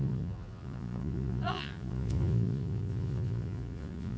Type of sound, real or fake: fake